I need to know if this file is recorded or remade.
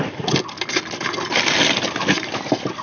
recorded